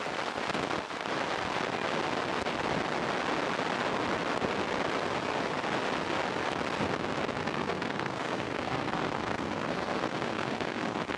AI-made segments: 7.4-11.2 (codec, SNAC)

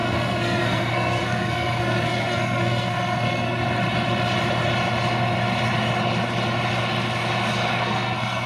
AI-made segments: 0.0-3.6 (codec, SNAC); 7.8-8.5